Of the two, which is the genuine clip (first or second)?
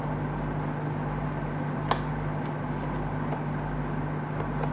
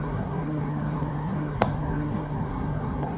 first